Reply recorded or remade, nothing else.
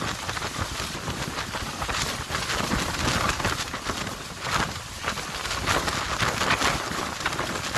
recorded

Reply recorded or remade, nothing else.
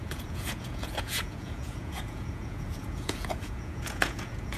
remade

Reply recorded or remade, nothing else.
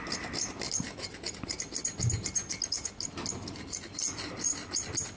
recorded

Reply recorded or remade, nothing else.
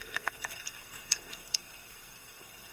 remade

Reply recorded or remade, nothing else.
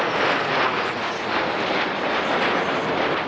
recorded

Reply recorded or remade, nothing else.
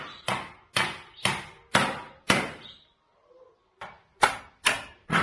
recorded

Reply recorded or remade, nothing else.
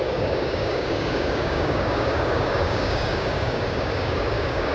remade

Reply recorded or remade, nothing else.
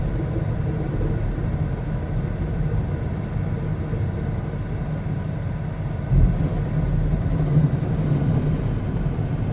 recorded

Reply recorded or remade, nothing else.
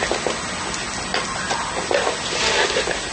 recorded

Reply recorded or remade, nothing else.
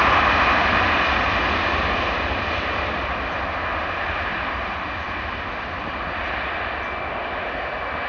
recorded